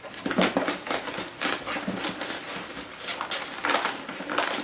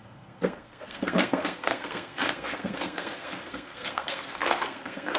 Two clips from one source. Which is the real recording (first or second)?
first